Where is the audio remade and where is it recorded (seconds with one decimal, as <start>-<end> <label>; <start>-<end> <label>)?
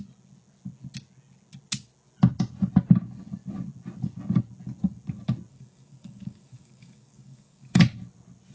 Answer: 0.0-5.5 recorded; 5.5-7.8 remade; 7.8-8.5 recorded